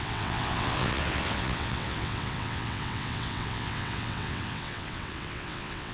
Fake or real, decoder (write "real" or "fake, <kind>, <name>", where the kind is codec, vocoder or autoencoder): fake, vocoder, WaveNeXt